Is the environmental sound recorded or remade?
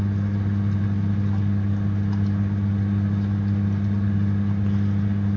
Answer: recorded